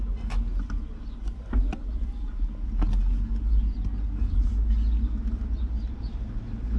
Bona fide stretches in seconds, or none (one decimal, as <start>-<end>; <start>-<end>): 0.0-6.8